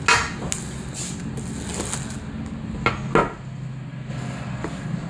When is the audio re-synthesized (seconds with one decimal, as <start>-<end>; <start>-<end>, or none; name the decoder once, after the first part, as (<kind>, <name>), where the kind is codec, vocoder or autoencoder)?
none